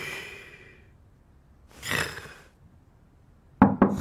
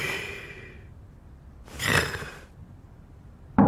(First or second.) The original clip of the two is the first